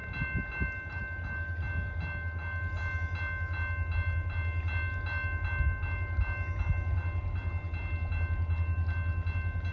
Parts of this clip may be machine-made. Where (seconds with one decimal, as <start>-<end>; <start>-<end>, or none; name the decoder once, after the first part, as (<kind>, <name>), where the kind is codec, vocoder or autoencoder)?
none